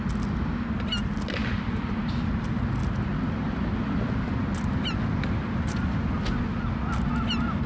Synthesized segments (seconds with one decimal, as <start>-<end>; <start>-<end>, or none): none